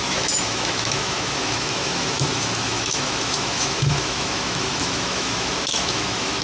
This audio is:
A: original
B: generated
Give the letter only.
B